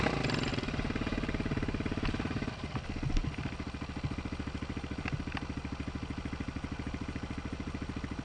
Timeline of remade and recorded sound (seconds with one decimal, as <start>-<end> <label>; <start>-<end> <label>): 0.0-0.5 recorded; 0.5-2.5 remade; 2.5-8.2 recorded